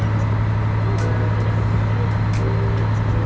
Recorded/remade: recorded